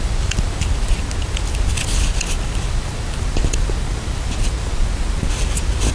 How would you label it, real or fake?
real